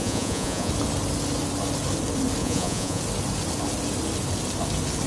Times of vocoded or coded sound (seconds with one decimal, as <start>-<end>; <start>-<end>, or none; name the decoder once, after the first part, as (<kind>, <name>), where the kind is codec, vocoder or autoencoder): 0.0-0.7 (vocoder, Vocos); 2.4-3.0

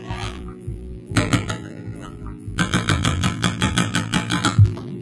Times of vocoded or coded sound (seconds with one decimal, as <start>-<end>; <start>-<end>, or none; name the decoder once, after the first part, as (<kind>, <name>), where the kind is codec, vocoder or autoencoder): 0.0-5.0 (vocoder, BigVGAN v2)

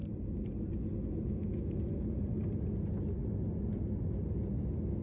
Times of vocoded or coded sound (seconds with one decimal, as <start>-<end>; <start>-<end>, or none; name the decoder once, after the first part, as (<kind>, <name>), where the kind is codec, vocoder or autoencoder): none

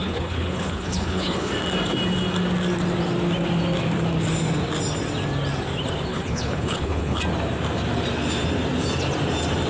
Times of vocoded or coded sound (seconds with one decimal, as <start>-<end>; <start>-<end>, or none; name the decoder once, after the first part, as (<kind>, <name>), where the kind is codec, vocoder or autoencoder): 0.0-1.5 (codec, HILCodec); 6.1-7.2

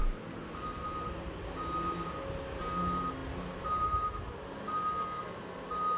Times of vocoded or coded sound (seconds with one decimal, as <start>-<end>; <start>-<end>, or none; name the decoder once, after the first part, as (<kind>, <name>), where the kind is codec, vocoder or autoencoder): none

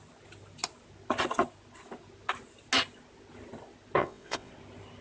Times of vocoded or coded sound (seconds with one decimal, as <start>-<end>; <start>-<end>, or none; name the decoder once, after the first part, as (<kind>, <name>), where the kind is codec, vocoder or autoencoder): 4.0-4.5 (vocoder, WaveNeXt)

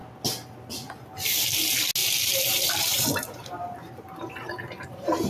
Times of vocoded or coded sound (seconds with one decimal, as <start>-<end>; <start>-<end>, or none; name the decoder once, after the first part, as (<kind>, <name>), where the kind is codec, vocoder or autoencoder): 2.0-5.3 (vocoder, BigVGAN v2)